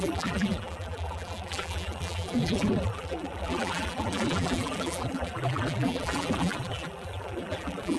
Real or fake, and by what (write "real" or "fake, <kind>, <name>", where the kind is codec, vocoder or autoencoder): fake, vocoder, BigVGAN v2